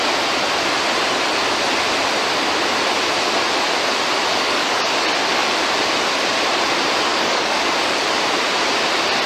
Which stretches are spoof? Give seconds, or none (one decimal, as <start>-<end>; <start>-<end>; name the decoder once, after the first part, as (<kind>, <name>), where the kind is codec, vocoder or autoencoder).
4.3-4.9 (codec, DAC); 7.1-8.2